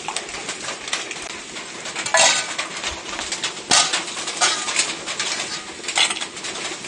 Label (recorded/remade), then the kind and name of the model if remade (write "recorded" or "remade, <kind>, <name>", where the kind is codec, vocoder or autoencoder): recorded